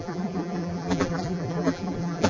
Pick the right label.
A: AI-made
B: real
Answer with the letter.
A